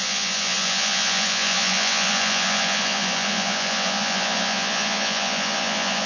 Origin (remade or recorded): remade